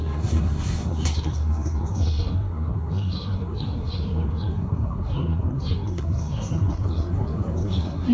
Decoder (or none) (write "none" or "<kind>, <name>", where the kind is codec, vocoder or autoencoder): codec, SNAC